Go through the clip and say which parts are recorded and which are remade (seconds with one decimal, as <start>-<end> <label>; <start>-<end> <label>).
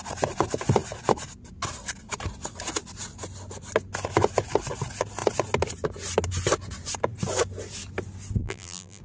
0.0-8.4 recorded; 8.4-9.0 remade